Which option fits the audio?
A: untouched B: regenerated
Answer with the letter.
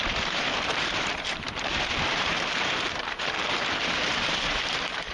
B